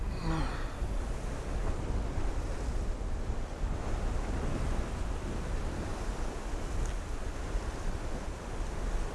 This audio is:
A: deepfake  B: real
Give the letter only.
B